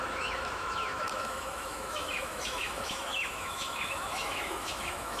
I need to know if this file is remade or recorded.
remade